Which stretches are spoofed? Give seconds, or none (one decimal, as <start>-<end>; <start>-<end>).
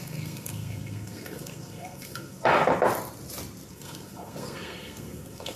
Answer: 0.0-2.5; 3.7-5.6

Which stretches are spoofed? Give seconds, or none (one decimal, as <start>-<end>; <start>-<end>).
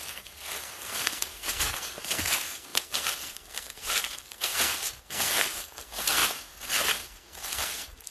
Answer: 0.0-8.1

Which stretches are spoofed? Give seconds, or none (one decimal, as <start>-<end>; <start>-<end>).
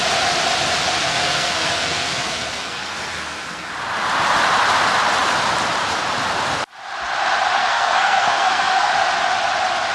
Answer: 1.0-3.7; 7.6-8.9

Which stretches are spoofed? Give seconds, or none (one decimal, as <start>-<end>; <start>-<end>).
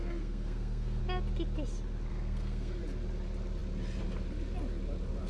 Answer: 0.0-1.0; 2.1-2.8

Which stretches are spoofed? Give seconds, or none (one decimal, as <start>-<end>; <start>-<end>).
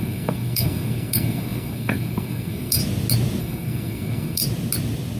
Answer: 0.0-2.8; 3.4-4.4